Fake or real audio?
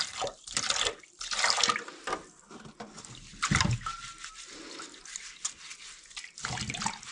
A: real